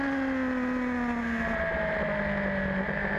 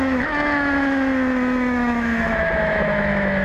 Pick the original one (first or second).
first